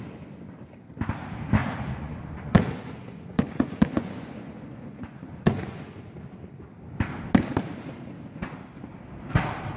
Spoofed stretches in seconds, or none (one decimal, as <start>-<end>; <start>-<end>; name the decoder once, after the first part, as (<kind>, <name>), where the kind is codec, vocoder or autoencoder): 1.6-6.0 (vocoder, Vocos)